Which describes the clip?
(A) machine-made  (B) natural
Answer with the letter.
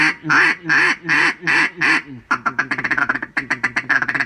B